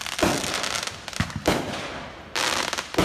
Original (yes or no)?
yes